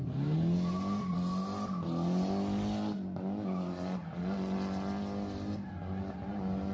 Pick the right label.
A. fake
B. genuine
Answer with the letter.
B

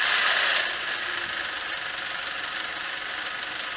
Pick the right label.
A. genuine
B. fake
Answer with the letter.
A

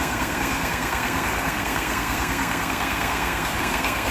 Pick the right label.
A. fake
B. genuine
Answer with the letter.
A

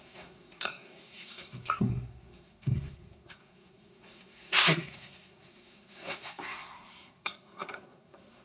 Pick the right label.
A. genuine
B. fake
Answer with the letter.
B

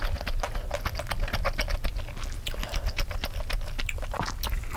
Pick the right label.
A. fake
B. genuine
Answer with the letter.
B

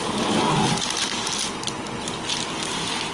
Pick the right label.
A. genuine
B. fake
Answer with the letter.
A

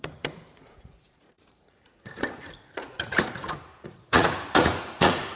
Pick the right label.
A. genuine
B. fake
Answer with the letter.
B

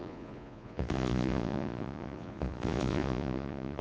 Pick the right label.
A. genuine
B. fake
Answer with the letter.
B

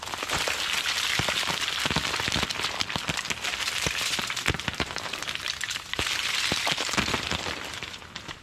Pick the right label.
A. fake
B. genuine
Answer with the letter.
A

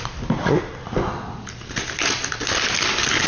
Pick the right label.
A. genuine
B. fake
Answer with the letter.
A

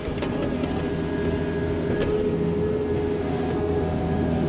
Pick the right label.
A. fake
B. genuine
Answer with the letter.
B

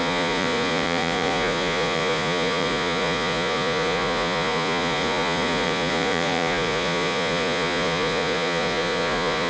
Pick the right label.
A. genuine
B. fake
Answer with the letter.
B